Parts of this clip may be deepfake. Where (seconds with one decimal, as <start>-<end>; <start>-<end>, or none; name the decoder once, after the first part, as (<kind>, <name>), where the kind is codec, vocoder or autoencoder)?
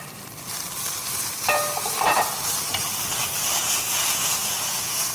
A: 3.6-5.1 (vocoder, Vocos)